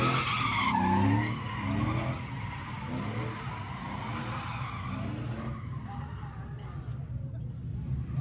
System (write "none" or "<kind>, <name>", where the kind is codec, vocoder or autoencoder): none